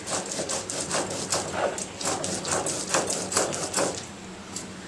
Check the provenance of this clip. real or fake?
real